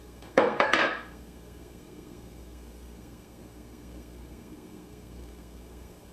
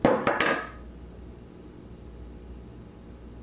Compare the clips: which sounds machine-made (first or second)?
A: first